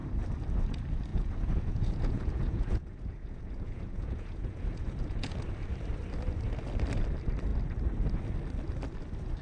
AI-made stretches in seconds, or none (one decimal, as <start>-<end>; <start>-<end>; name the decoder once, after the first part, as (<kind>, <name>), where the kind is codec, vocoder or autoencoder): 1.1-5.3 (vocoder, Vocos)